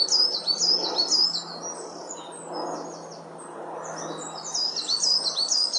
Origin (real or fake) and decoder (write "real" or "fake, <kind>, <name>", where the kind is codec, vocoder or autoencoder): real